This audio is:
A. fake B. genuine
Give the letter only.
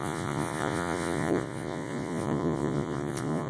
A